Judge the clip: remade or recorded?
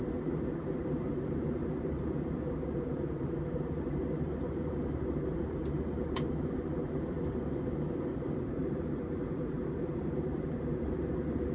remade